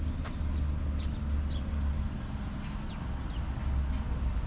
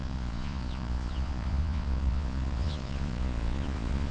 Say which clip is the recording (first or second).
first